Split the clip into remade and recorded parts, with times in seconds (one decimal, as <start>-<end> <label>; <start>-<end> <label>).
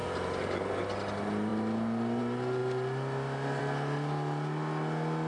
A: 0.0-5.3 recorded